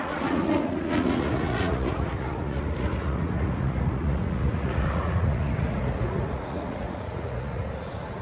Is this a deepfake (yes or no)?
yes